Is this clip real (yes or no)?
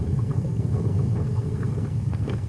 no